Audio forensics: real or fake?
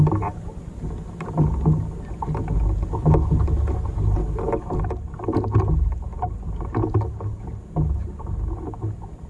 real